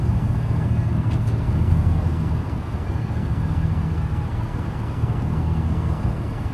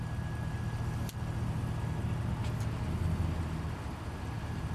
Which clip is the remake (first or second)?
first